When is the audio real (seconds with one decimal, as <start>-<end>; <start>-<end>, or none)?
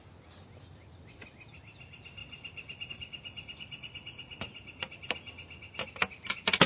0.0-6.7